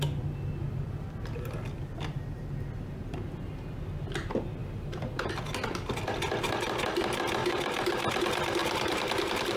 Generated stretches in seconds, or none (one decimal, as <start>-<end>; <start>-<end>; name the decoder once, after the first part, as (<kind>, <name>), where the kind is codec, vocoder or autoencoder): 4.6-5.3 (vocoder, BigVGAN v2); 7.4-8.2; 8.6-9.6